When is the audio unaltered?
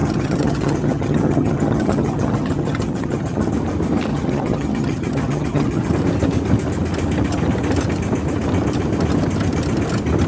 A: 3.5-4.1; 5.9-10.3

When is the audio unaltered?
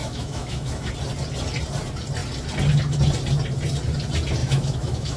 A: 0.9-4.4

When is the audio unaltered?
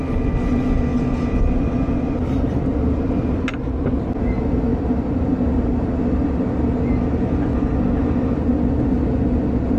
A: 0.0-9.8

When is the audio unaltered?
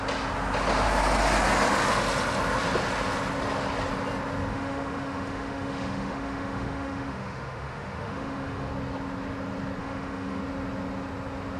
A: 0.0-4.5; 8.7-9.8; 10.4-11.6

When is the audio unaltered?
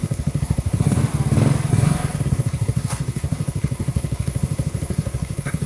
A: 1.0-1.7